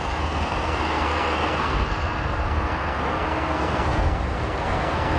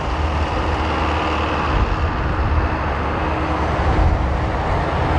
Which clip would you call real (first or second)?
second